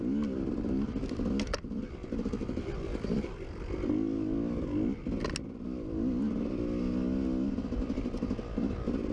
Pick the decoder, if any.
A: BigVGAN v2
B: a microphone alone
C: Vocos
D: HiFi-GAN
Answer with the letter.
B